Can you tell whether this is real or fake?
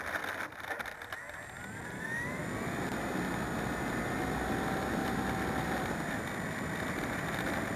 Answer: real